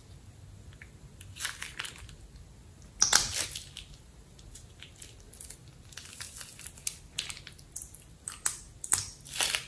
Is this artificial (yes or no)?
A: no